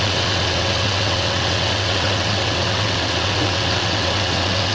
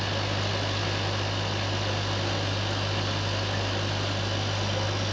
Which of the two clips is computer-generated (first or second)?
first